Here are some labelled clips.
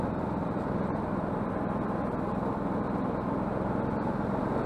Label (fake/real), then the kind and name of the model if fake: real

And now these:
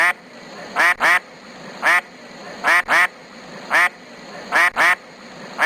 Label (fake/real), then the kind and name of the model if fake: real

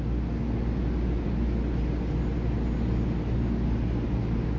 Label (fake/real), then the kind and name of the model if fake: real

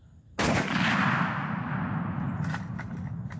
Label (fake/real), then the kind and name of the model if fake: real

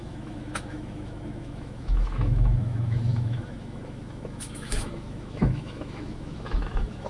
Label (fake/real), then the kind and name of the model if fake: fake, autoencoder, DAC-VAE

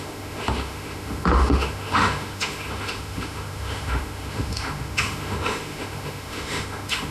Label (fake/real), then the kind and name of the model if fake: fake, autoencoder, DAC-VAE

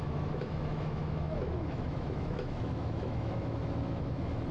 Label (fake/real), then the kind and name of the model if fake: fake, autoencoder, DAC-VAE